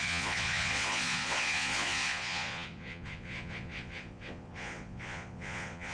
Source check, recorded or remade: remade